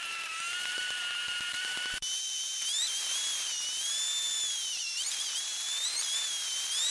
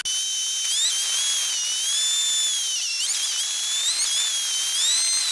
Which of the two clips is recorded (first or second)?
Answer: second